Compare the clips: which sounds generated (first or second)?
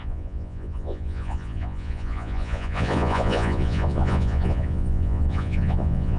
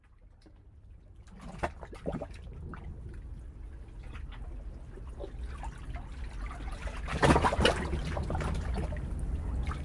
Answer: first